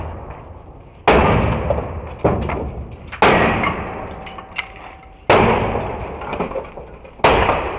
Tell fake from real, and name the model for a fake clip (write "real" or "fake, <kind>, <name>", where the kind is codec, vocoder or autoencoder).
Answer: real